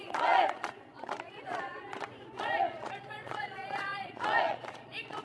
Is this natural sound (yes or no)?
no